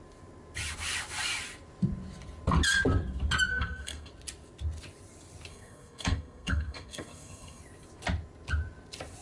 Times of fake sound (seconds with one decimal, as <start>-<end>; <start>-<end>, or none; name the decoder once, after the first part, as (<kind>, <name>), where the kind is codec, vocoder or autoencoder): 3.5-4.1 (codec, SNAC); 5.5-7.6